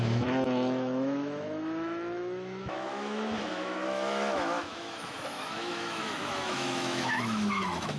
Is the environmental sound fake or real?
fake